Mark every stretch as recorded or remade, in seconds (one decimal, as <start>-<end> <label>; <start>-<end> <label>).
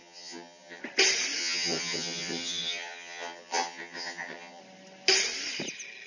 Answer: 0.0-0.8 remade; 0.8-1.4 recorded; 1.4-4.6 remade; 4.6-6.1 recorded